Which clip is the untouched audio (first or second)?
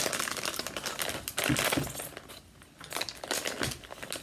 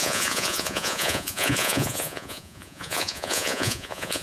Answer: first